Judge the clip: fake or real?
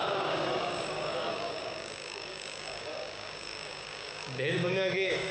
fake